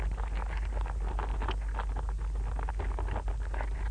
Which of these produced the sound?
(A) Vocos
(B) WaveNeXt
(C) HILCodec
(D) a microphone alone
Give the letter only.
D